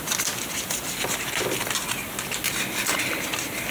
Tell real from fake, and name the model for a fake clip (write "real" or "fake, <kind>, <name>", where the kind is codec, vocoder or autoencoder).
real